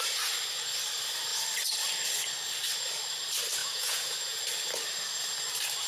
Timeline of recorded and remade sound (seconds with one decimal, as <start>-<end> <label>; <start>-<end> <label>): 0.0-3.6 recorded; 3.6-4.4 remade; 4.4-5.9 recorded